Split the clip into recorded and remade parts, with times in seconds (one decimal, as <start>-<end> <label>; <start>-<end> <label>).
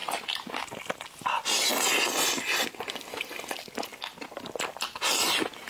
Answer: 0.0-5.7 recorded